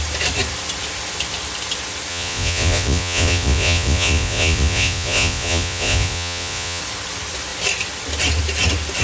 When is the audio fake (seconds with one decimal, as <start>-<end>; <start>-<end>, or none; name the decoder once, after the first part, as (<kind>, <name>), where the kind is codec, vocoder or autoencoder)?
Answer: 2.1-6.8 (vocoder, Vocos)